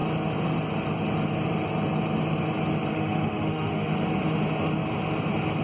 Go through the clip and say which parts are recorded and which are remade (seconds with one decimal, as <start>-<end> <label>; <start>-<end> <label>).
0.0-2.9 recorded; 2.9-3.9 remade; 3.9-5.6 recorded